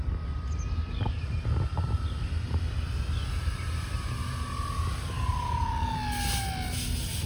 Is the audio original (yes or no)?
yes